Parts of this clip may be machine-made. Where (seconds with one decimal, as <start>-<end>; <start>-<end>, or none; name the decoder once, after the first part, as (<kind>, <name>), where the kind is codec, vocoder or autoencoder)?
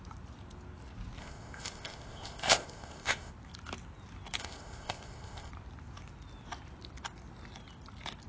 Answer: 1.2-3.3 (codec, ZipCodec); 4.4-5.5